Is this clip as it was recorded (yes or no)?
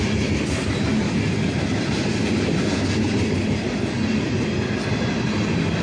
yes